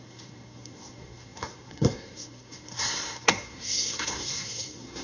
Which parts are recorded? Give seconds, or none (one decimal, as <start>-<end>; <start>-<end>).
none